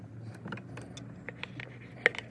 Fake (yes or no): no